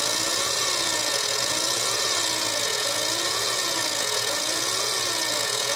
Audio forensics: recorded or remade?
remade